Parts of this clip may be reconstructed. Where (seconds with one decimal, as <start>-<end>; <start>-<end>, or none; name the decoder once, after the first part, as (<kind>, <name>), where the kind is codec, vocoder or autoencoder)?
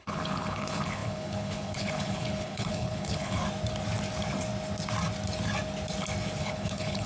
0.0-3.4 (codec, HILCodec); 6.4-7.1